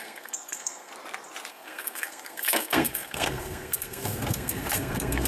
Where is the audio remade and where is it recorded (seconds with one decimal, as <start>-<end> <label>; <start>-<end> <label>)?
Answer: 0.0-0.9 remade; 0.9-1.5 recorded; 1.5-5.3 remade